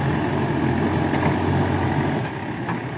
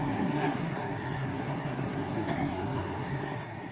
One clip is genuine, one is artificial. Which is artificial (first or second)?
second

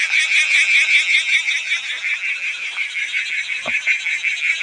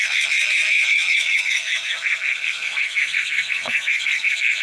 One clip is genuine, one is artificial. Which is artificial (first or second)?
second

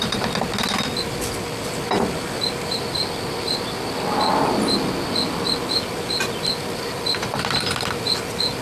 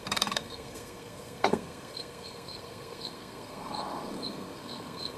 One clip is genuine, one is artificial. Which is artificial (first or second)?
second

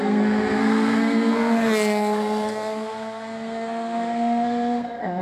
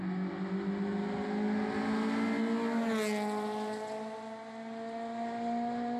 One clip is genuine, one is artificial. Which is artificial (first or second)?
first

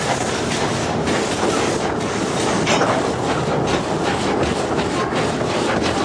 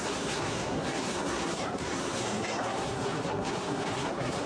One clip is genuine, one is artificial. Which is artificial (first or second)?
second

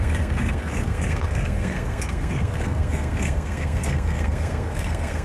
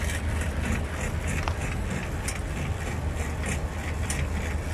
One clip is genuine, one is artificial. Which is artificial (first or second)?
first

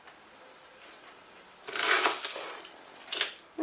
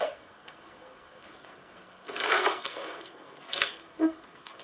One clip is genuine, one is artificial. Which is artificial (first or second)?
second